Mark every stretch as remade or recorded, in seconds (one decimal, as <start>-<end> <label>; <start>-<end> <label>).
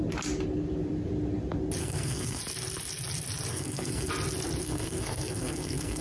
0.0-1.8 recorded; 1.8-2.4 remade; 2.4-3.5 recorded; 3.5-4.1 remade; 4.1-4.6 recorded; 4.6-6.0 remade